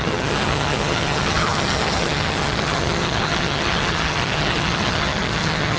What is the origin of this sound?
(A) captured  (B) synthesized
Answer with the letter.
B